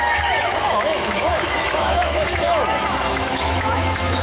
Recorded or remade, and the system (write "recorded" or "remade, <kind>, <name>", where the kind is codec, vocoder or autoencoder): remade, autoencoder, DAC-VAE